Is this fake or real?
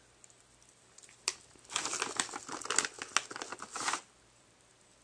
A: real